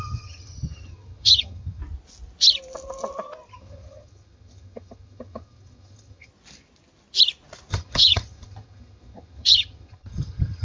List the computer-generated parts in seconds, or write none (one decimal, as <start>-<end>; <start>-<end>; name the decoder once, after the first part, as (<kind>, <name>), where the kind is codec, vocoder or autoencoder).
0.0-1.8 (vocoder, HiFi-GAN); 3.5-6.3; 7.7-10.6